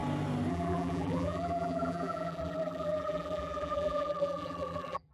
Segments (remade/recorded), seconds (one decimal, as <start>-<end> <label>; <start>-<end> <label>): 0.0-0.5 recorded; 0.5-5.1 remade